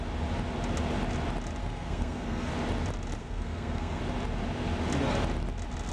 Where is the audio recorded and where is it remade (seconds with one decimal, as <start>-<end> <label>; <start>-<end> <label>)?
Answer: 0.0-1.6 recorded; 1.6-2.5 remade; 2.5-3.2 recorded; 3.2-4.0 remade; 4.0-5.9 recorded